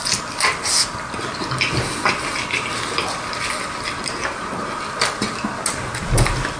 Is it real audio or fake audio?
real